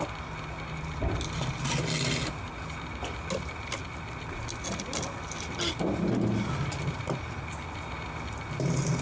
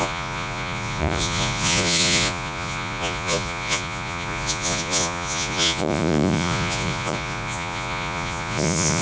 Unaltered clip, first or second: first